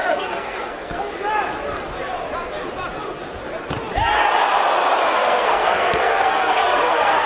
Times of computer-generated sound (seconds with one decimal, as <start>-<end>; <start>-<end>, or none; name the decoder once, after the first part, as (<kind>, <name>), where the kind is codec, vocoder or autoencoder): 0.0-1.1 (codec, SNAC); 5.1-7.3